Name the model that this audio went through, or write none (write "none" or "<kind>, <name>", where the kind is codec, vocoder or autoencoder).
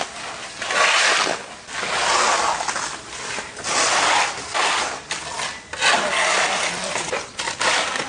none